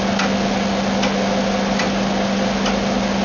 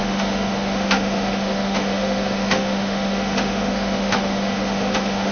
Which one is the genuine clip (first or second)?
first